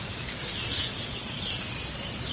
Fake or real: fake